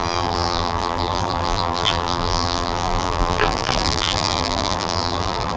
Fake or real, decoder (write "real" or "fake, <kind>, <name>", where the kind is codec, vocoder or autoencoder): fake, vocoder, BigVGAN v2